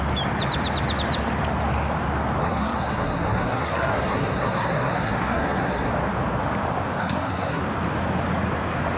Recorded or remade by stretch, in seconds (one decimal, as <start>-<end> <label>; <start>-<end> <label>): 0.0-2.4 recorded; 2.4-5.9 remade; 5.9-7.0 recorded; 7.0-7.6 remade; 7.6-9.0 recorded